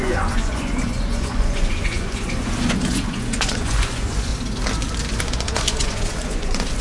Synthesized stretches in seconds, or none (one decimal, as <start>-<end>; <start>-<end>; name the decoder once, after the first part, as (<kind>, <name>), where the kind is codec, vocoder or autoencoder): 0.0-4.3 (vocoder, Vocos); 5.2-6.8